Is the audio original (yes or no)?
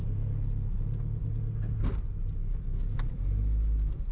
yes